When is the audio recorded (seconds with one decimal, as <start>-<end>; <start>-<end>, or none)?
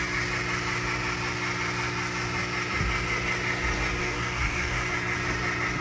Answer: 0.0-4.0; 4.9-5.8